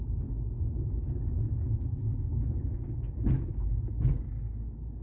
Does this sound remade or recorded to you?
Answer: recorded